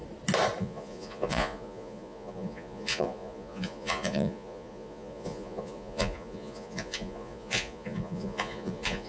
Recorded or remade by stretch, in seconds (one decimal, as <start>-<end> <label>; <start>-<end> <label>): 0.0-0.6 recorded; 0.6-9.1 remade